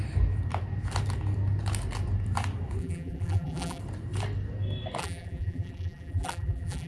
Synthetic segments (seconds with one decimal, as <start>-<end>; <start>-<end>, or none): 2.8-3.8; 5.0-6.9